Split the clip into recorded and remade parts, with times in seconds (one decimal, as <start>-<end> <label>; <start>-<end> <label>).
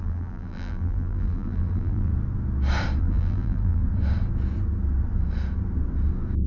0.0-2.1 remade; 2.1-3.0 recorded; 3.0-3.8 remade; 3.8-6.5 recorded